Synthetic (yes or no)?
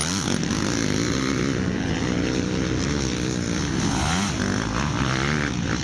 no